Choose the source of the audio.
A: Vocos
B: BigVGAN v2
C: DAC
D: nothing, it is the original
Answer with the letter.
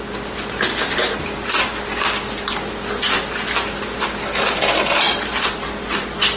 D